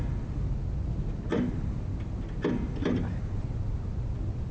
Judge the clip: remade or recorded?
recorded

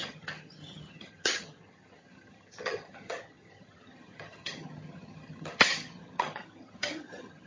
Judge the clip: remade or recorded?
remade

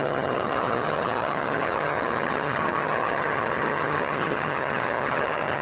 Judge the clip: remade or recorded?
remade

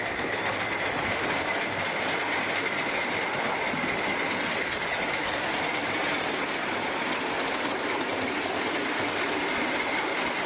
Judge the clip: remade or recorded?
recorded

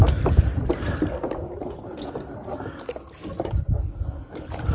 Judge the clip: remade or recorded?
recorded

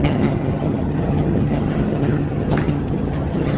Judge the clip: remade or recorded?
remade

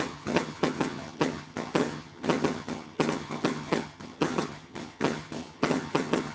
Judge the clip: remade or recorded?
remade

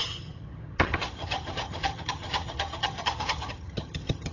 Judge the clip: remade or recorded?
remade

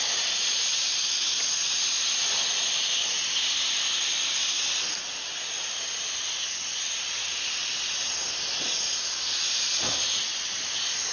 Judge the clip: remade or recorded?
recorded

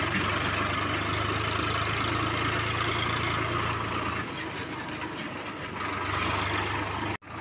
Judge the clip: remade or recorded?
recorded